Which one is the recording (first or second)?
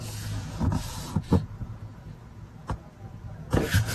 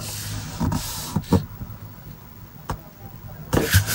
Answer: second